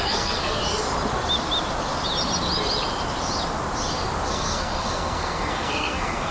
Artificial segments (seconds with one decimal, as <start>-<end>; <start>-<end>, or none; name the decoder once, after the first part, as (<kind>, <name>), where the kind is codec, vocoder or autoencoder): 0.0-0.6 (codec, SNAC); 4.3-6.3